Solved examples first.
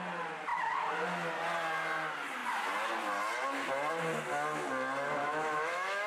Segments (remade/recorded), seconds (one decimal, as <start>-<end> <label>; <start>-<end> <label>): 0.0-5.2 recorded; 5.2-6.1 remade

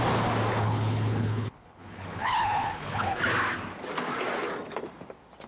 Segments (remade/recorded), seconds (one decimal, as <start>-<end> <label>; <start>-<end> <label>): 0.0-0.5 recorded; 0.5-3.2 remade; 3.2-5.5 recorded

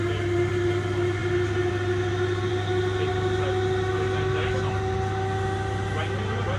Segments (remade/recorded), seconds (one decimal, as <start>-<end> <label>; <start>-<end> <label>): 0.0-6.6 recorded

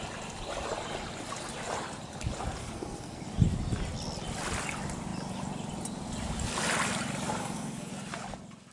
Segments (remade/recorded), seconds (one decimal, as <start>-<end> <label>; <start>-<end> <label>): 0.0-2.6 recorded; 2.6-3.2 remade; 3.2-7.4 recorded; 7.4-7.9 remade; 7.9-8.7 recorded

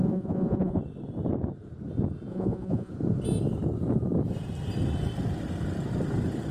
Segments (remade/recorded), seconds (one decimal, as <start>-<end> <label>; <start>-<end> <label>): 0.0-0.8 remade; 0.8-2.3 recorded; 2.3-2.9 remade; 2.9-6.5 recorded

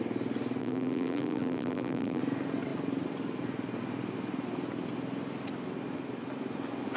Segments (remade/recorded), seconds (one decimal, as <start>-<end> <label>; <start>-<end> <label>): 0.0-0.6 recorded; 0.6-2.2 remade; 2.2-7.0 recorded

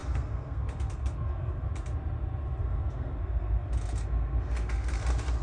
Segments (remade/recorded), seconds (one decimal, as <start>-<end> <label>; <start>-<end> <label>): 0.0-1.7 remade; 1.7-2.6 recorded; 2.6-5.0 remade; 5.0-5.4 recorded

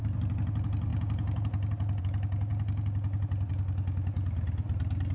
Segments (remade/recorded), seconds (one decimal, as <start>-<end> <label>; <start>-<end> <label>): 0.0-5.1 recorded